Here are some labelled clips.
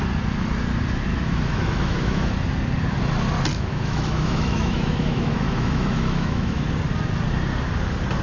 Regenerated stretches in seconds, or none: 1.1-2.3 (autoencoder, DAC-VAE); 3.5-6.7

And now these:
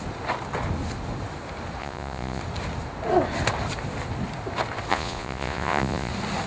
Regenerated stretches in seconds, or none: 1.8-2.4 (vocoder, Vocos); 4.9-6.1

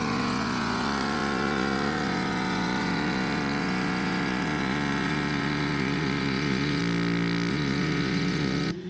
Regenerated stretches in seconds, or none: 0.0-6.8 (vocoder, Vocos); 7.5-8.9

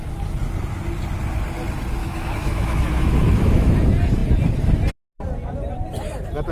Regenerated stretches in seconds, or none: 2.0-3.7 (autoencoder, DAC-VAE)

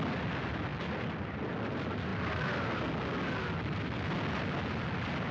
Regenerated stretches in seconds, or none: none

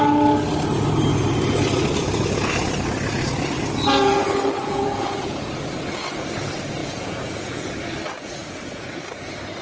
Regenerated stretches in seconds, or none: 4.6-5.5 (vocoder, Vocos); 6.8-7.7; 8.4-9.0

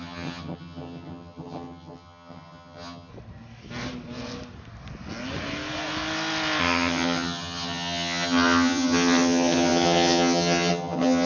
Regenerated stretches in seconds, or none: 0.0-3.1 (vocoder, HiFi-GAN); 6.6-11.3